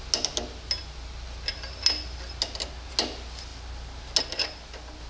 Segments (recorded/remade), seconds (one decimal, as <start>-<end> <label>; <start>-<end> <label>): 0.0-5.1 recorded